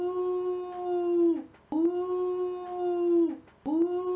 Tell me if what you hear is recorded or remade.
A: recorded